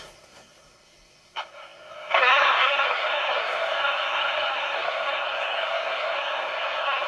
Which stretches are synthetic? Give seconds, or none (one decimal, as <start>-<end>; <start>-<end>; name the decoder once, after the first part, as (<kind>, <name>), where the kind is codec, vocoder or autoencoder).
0.0-7.1 (codec, SNAC)